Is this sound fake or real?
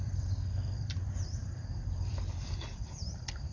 fake